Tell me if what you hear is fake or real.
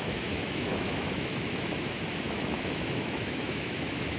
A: fake